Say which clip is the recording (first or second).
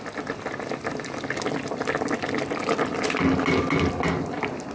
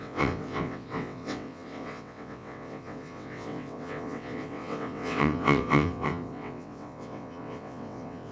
first